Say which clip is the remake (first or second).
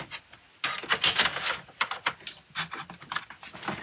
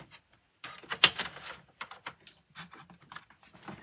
second